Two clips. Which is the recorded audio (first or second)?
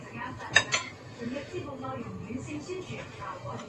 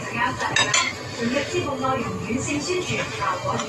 second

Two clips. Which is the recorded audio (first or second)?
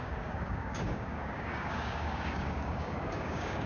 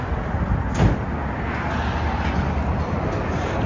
second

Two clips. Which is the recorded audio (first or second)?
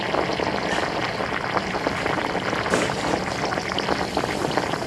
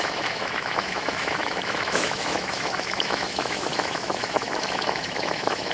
first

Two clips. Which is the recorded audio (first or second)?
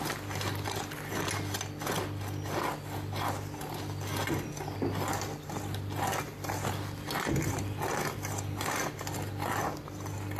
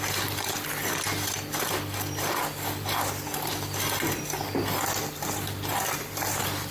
first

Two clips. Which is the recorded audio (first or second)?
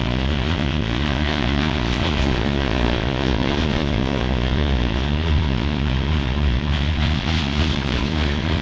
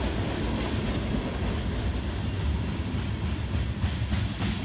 second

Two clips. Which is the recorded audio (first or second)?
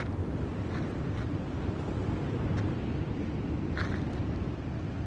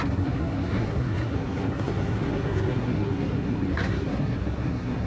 first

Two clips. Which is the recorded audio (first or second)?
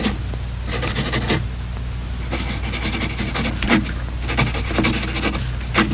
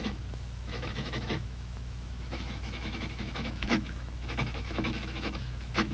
first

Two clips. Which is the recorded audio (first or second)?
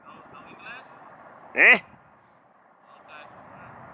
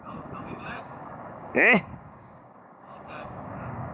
first